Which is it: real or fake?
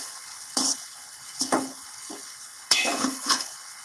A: fake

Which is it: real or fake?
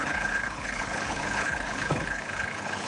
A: fake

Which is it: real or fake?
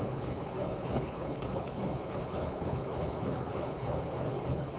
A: fake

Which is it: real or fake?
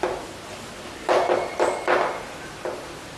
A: real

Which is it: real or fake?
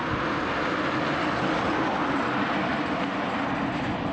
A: real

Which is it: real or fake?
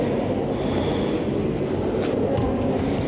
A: real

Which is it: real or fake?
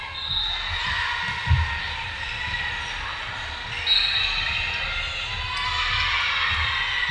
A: real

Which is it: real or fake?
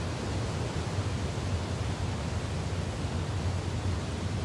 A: real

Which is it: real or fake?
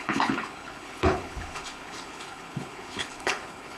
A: fake